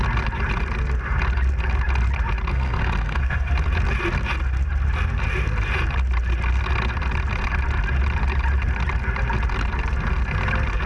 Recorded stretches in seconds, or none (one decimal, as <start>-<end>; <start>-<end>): 0.0-2.5; 3.5-10.9

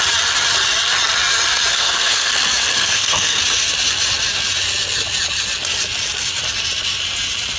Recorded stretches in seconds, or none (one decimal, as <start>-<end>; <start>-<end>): 0.0-1.7; 2.3-2.7; 3.4-7.6

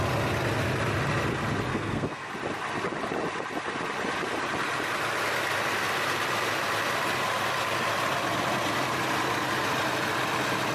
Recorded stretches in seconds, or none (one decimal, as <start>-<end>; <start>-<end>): 0.0-1.7; 2.3-10.7